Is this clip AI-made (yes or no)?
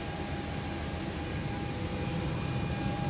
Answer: no